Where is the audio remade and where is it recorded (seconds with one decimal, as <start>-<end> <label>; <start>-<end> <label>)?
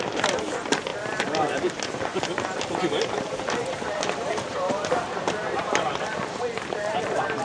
0.0-7.4 remade